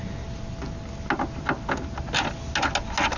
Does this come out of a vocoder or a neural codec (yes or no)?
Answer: no